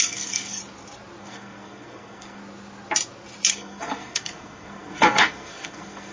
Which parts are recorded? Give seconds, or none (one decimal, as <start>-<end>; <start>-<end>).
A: 0.6-1.2; 2.4-3.5

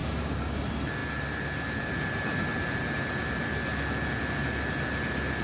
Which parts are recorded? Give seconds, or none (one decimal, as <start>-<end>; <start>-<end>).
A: 0.6-5.4

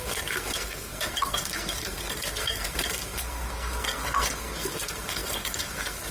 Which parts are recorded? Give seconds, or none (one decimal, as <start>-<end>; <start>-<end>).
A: none